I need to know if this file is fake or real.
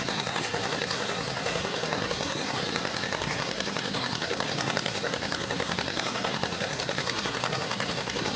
fake